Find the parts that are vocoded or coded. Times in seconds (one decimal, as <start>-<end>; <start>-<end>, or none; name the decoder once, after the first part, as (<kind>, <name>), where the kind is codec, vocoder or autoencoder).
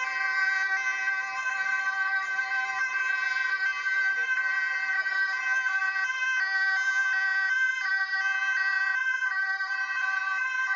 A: 1.0-2.4 (vocoder, BigVGAN v2); 5.0-5.8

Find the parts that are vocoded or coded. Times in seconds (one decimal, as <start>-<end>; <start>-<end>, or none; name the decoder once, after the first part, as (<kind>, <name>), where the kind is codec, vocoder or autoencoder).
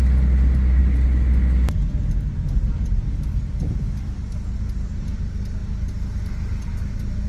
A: 5.6-6.3 (vocoder, BigVGAN v2)